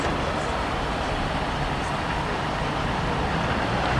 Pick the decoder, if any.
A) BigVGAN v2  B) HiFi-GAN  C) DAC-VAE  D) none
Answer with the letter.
D